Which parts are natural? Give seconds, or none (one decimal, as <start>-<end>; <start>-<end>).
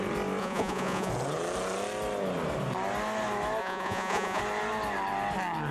0.0-0.4; 1.1-3.6; 4.4-5.7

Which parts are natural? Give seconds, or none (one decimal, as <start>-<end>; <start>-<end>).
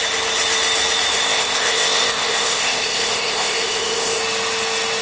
0.0-1.2; 4.2-5.0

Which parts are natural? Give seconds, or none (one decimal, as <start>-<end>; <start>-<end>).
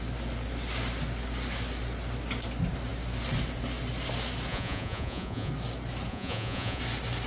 0.0-4.5; 5.5-6.1; 6.8-7.3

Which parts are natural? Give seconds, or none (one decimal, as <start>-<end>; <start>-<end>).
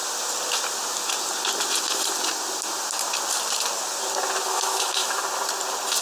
0.0-4.5; 5.2-6.0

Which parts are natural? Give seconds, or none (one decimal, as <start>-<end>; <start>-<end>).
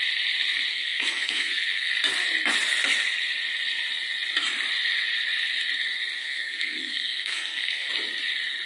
0.0-0.7; 1.9-6.2; 7.9-8.7